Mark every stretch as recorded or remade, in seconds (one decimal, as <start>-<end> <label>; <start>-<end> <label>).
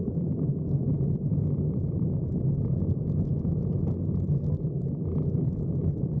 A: 0.0-0.9 recorded; 0.9-3.9 remade; 3.9-6.2 recorded